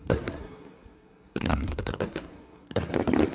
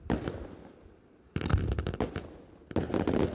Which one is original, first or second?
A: second